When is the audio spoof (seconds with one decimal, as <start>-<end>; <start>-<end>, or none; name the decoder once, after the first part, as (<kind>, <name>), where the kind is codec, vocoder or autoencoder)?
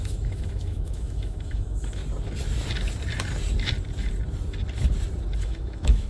0.0-2.0 (autoencoder, DAC-VAE); 5.4-6.1